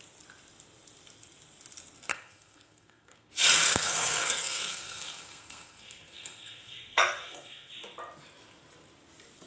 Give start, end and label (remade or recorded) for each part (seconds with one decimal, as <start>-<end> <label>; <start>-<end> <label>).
0.0-2.1 recorded; 2.1-3.3 remade; 3.3-3.7 recorded; 3.7-7.7 remade; 7.7-9.5 recorded